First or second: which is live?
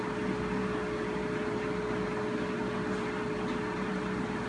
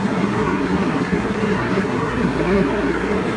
first